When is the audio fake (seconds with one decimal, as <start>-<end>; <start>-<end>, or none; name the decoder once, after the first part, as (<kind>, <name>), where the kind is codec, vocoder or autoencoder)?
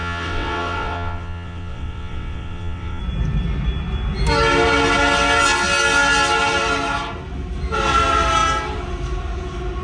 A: 0.0-3.0 (vocoder, WaveNeXt)